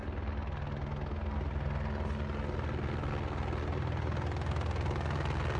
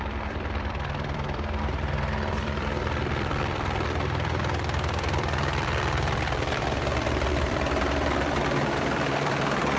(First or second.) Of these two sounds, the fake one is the second